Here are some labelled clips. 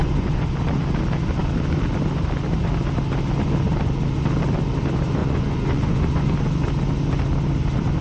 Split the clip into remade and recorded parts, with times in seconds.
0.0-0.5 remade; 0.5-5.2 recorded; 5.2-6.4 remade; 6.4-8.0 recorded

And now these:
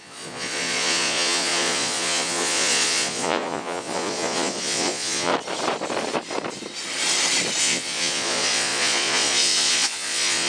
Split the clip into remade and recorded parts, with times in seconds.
0.0-5.3 remade; 5.3-7.6 recorded; 7.6-10.5 remade

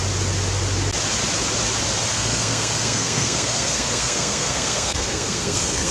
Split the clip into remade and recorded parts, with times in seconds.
0.0-2.1 recorded; 2.1-5.9 remade

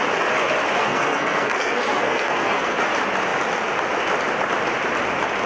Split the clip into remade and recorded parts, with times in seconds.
0.0-0.8 recorded; 0.8-2.9 remade; 2.9-5.5 recorded

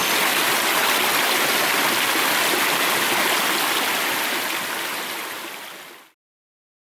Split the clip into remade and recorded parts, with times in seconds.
0.0-6.9 recorded